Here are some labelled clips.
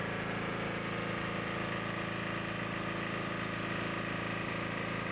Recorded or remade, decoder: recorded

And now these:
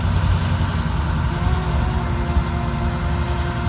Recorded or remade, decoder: recorded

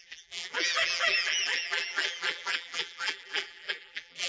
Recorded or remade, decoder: remade, vocoder, BigVGAN v2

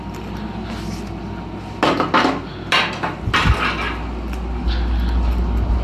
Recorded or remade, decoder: recorded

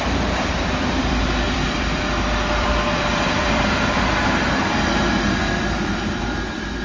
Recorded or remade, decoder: remade, vocoder, BigVGAN v2